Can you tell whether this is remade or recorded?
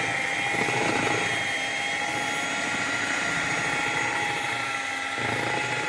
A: recorded